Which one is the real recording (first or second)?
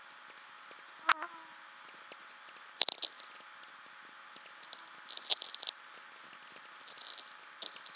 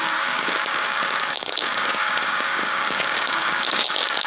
first